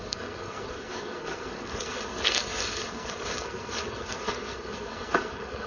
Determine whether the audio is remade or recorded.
remade